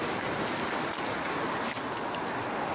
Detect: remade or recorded recorded